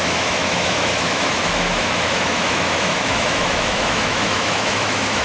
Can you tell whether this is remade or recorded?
remade